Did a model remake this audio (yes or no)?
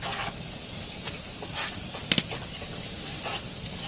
no